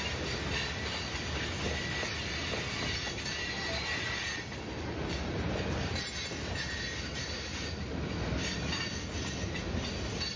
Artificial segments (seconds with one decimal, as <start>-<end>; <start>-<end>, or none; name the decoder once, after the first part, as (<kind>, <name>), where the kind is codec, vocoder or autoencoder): none